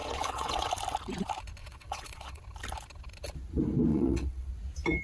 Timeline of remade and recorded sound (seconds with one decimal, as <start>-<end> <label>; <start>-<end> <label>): 0.0-0.7 remade; 0.7-1.6 recorded; 1.6-2.4 remade; 2.4-3.9 recorded; 3.9-4.5 remade; 4.5-5.0 recorded